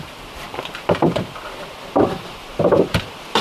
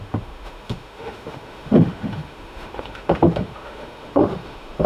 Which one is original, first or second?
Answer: first